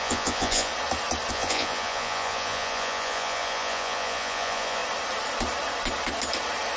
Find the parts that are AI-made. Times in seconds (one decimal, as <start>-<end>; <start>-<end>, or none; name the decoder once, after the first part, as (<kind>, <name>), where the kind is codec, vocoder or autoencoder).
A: 0.0-0.7 (vocoder, Vocos); 1.3-4.8